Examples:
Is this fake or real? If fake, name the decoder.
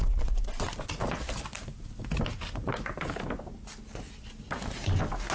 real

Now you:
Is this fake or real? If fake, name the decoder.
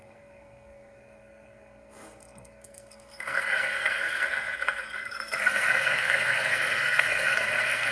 fake, codec, SNAC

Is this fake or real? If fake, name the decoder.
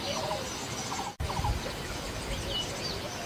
real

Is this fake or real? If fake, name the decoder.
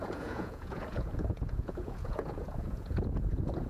fake, vocoder, Vocos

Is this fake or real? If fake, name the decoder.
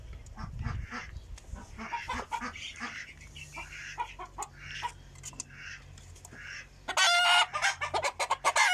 real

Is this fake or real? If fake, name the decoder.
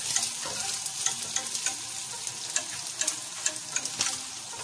real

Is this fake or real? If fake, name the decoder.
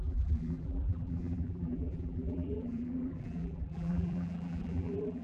fake, vocoder, BigVGAN v2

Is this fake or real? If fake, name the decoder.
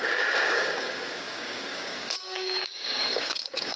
fake, codec, DAC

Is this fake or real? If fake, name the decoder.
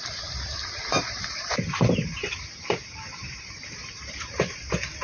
fake, vocoder, BigVGAN v2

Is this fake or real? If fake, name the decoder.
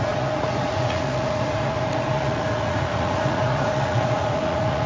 fake, vocoder, Vocos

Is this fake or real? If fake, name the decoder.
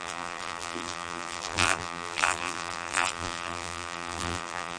fake, vocoder, BigVGAN v2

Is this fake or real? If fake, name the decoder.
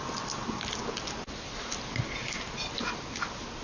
real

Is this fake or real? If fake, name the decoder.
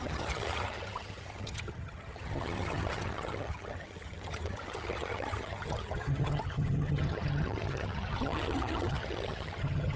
fake, vocoder, HiFi-GAN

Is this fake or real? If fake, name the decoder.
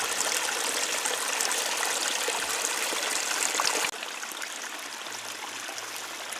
real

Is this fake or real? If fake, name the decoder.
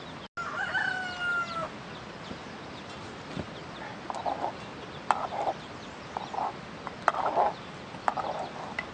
real